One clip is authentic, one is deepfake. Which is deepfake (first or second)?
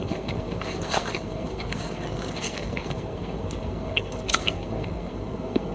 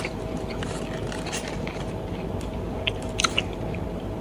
first